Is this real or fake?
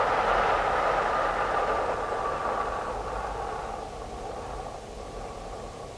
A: real